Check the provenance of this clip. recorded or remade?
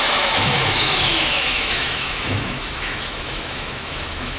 remade